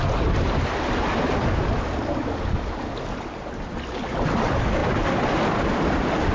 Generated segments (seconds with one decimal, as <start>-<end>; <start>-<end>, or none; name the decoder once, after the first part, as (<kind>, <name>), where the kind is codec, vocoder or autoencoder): none